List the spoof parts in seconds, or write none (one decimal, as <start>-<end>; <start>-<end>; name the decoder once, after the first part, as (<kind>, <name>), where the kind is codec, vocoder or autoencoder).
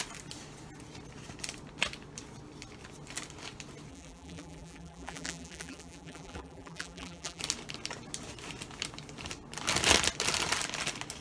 3.9-7.4 (vocoder, BigVGAN v2)